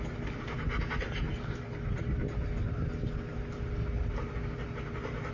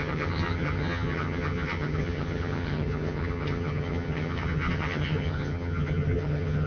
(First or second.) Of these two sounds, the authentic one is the first